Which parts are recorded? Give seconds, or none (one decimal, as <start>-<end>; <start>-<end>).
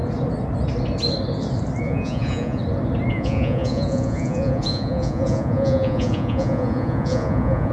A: 0.0-1.8; 2.6-3.1